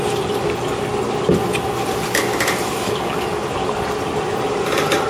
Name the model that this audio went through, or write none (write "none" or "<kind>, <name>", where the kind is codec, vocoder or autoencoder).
none